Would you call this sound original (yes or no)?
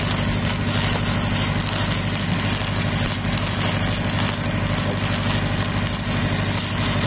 yes